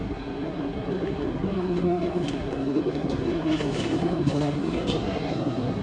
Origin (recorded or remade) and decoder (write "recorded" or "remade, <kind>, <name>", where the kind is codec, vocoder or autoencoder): remade, codec, SNAC